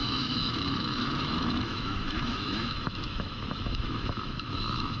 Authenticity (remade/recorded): remade